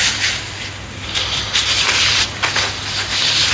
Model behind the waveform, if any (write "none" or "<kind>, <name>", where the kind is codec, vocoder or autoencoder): none